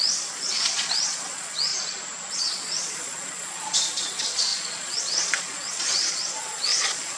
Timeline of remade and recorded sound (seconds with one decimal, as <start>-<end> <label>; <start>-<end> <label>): 0.0-1.7 remade; 1.7-2.3 recorded; 2.3-7.2 remade